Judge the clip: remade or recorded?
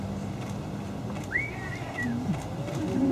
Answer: recorded